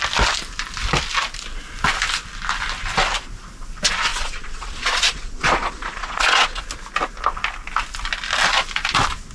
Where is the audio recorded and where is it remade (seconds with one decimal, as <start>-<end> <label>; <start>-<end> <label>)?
0.0-4.1 recorded; 4.1-6.6 remade; 6.6-9.3 recorded